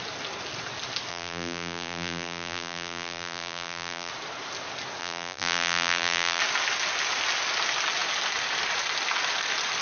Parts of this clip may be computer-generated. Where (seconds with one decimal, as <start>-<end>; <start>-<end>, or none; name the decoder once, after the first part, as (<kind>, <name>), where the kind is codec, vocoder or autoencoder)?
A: 1.1-4.1 (vocoder, BigVGAN v2); 5.0-6.4